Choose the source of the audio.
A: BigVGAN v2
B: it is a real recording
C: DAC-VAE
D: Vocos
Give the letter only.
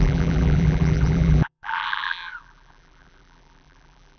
A